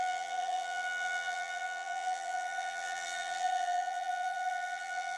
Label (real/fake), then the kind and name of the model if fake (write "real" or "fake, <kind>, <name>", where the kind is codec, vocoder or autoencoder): fake, vocoder, BigVGAN v2